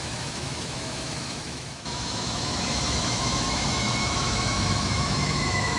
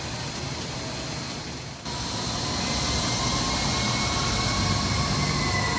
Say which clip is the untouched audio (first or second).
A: second